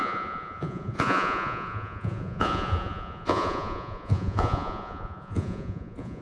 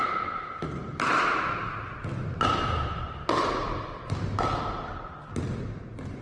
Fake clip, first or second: first